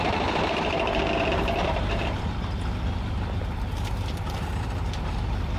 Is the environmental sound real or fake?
fake